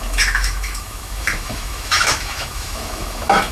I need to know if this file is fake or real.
fake